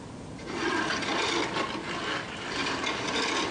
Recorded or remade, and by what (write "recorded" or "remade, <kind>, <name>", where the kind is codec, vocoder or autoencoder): recorded